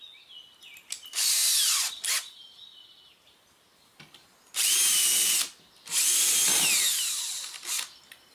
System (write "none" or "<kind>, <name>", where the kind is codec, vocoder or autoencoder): none